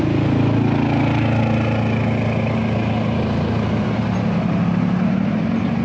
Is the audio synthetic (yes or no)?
no